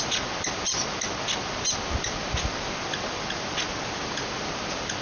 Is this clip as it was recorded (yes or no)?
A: yes